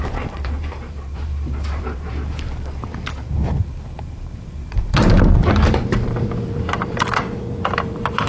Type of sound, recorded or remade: remade